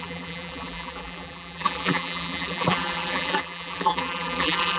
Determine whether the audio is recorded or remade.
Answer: remade